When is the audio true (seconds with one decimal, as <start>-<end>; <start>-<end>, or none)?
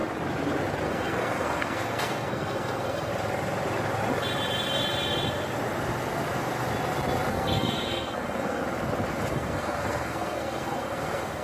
0.0-0.8; 3.1-7.3; 8.6-9.3